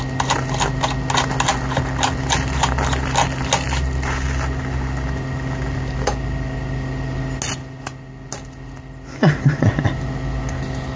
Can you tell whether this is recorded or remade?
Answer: recorded